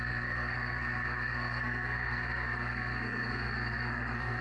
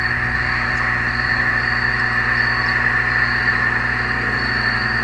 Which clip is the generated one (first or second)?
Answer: first